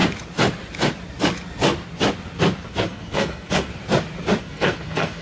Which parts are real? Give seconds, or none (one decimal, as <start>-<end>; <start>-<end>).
0.0-2.7; 3.7-4.4